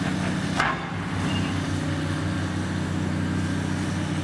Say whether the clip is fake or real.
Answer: real